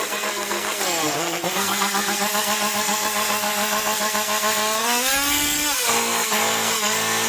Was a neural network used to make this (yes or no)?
yes